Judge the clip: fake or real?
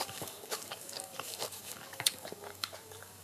fake